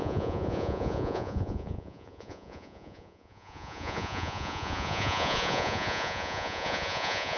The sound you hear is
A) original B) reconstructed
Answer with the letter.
B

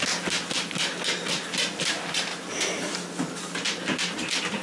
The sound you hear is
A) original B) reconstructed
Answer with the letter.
A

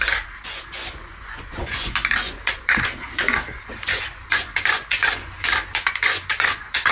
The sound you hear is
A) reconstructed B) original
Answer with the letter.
A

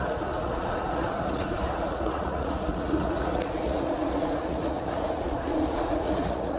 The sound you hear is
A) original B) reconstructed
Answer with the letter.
B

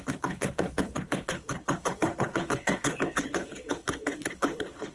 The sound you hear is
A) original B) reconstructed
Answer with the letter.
B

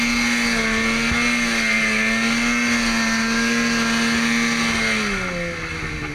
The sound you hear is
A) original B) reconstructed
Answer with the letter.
A